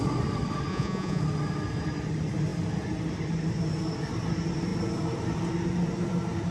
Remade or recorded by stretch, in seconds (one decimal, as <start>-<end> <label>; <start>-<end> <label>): 0.0-0.7 recorded; 0.7-1.2 remade; 1.2-6.5 recorded